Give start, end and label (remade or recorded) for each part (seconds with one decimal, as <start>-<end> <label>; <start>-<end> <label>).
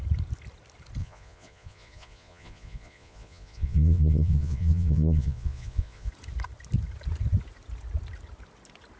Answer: 0.0-1.0 recorded; 1.0-6.1 remade; 6.1-9.0 recorded